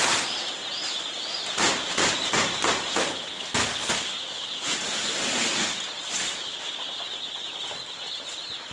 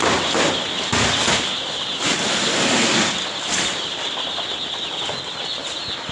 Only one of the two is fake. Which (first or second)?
first